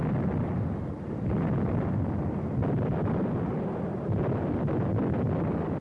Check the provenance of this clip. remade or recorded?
recorded